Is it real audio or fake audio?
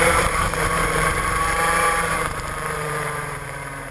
fake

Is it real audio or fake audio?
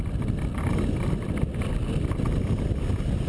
real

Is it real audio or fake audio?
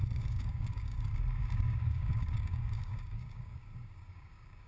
fake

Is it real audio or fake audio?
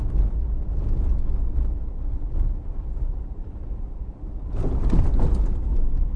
real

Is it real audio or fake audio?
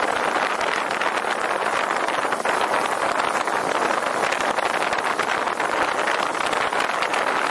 real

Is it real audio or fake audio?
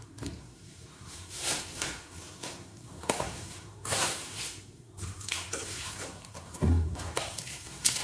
fake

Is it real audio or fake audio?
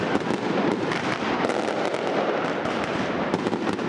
real